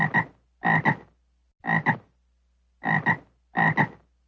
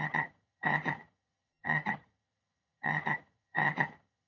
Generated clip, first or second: second